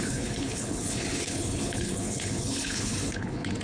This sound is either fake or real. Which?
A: fake